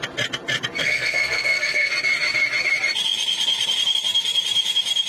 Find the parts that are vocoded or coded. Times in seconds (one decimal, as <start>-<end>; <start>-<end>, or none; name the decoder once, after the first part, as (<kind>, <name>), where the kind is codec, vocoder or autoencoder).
0.8-1.9 (codec, SNAC)